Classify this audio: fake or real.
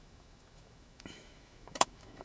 fake